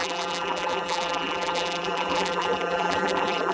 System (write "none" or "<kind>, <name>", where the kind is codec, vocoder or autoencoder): vocoder, BigVGAN v2